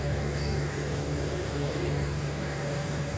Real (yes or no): no